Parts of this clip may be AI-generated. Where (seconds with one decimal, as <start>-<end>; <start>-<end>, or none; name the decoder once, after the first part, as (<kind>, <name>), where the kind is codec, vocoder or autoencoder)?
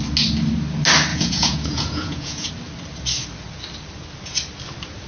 1.1-2.5 (vocoder, Vocos)